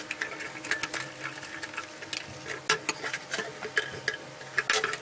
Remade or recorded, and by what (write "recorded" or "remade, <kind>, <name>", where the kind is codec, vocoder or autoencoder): recorded